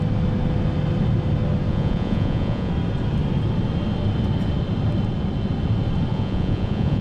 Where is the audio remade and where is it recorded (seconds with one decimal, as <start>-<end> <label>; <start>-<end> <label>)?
0.0-1.7 recorded; 1.7-2.7 remade; 2.7-6.1 recorded; 6.1-7.0 remade